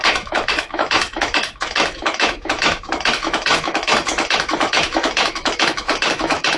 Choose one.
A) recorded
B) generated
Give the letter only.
B